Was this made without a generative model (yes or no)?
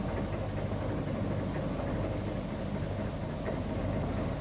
yes